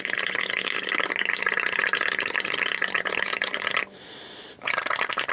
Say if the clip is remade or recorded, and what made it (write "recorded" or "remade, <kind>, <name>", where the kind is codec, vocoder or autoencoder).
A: recorded